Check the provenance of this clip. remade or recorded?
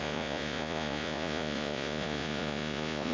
remade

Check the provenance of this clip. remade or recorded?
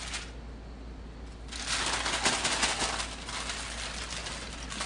recorded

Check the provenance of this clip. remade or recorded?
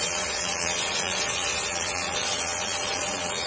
remade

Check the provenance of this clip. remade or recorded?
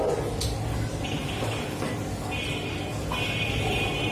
recorded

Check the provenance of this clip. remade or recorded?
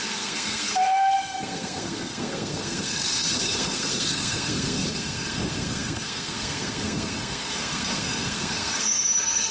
remade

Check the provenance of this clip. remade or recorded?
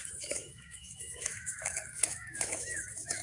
remade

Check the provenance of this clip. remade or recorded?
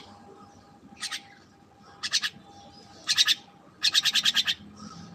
recorded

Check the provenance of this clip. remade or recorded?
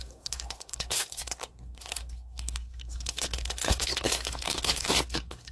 remade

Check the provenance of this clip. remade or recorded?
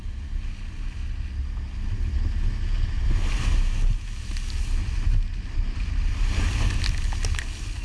recorded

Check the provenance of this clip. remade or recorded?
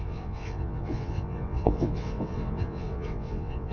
remade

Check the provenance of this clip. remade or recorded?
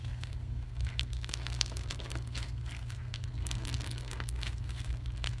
remade